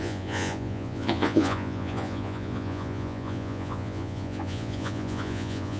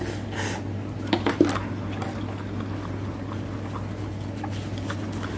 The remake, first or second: first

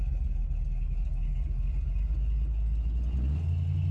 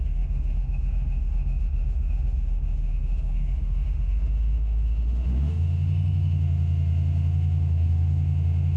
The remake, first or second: second